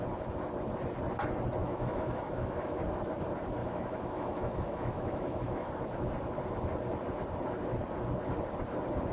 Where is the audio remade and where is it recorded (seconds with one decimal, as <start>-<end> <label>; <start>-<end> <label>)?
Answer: 0.0-1.6 recorded; 1.6-2.8 remade; 2.8-3.6 recorded; 3.6-5.7 remade; 5.7-9.1 recorded